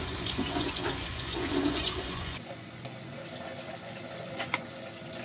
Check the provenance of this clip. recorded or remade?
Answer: remade